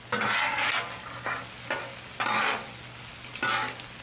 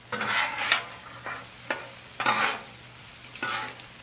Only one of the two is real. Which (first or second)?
first